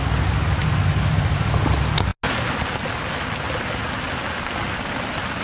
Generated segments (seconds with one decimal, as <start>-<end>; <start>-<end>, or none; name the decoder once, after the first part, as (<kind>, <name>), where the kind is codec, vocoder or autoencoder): none